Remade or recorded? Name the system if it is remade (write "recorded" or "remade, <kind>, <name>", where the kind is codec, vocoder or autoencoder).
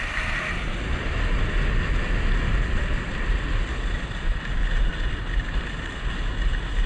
recorded